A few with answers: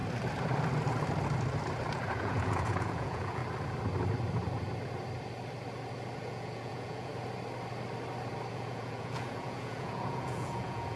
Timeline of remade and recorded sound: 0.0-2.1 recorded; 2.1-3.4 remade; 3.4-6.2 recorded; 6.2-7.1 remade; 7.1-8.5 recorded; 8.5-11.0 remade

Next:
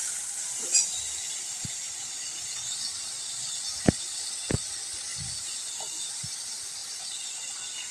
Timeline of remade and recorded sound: 0.0-7.9 recorded

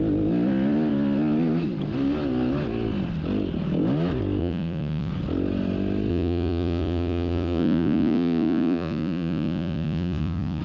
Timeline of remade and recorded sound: 0.0-4.4 recorded; 4.4-5.1 remade; 5.1-6.1 recorded; 6.1-10.6 remade

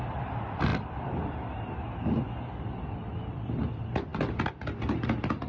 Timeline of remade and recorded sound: 0.0-5.5 remade